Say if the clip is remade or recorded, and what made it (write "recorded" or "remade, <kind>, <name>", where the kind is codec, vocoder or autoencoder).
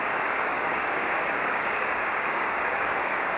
remade, codec, DAC